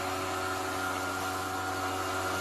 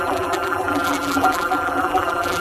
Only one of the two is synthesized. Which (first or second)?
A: second